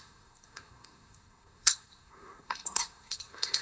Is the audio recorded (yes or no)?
no